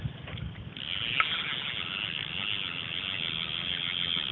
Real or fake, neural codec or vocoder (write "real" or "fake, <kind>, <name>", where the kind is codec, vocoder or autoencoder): real